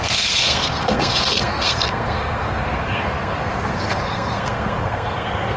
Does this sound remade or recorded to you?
remade